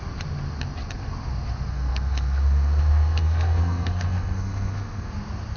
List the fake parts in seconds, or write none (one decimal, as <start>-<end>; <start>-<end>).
1.7-5.1